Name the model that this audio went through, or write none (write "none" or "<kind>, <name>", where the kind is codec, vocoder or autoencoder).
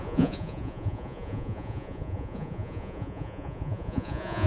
vocoder, Vocos